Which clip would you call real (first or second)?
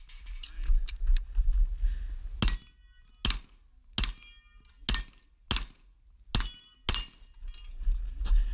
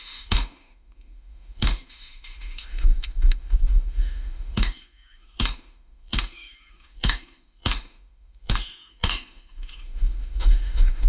first